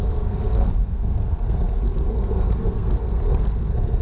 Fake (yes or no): yes